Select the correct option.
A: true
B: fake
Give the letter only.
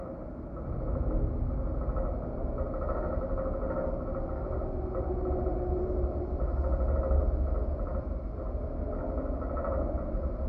A